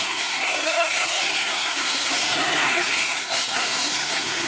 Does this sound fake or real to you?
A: fake